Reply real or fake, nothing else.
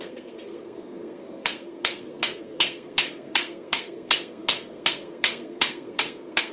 fake